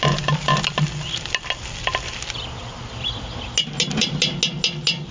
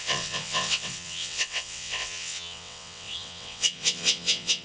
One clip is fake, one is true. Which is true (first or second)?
first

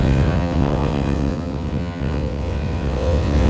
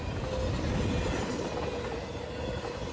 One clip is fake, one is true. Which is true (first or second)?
second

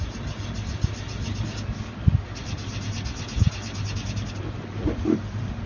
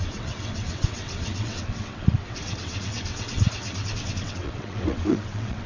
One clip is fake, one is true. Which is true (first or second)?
first